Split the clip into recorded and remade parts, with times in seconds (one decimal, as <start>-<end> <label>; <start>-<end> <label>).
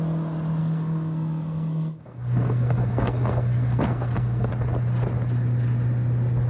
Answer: 0.0-0.6 recorded; 0.6-4.5 remade; 4.5-6.5 recorded